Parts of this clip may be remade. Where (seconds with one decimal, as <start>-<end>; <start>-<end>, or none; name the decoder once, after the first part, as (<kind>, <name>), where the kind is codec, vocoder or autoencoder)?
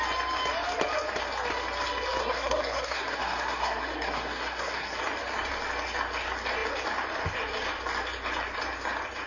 2.2-5.0 (codec, SNAC)